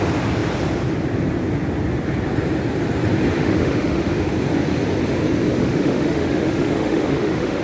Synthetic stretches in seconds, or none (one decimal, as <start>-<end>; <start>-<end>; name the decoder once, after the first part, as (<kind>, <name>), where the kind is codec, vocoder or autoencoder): 3.4-4.3 (autoencoder, DAC-VAE); 5.6-7.6